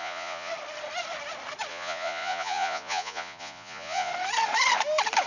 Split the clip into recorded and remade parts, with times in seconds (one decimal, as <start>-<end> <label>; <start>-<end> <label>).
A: 0.0-0.5 remade; 0.5-1.7 recorded; 1.7-4.1 remade; 4.1-5.3 recorded